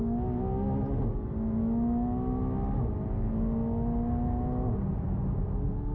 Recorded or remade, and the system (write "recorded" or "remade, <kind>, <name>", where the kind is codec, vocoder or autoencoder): recorded